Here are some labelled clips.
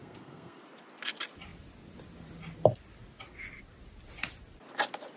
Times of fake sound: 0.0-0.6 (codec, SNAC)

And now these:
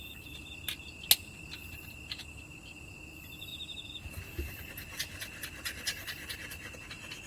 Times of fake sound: 3.5-4.2 (vocoder, BigVGAN v2)